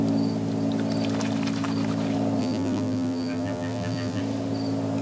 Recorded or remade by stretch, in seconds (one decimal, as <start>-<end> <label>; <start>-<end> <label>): 0.0-2.4 recorded; 2.4-4.2 remade; 4.2-5.0 recorded